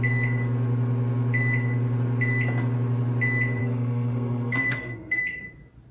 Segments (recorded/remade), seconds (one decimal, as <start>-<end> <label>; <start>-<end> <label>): 0.0-3.6 recorded; 3.6-5.2 remade; 5.2-5.9 recorded